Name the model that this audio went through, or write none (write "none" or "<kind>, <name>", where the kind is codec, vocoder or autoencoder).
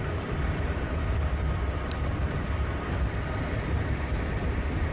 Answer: vocoder, BigVGAN v2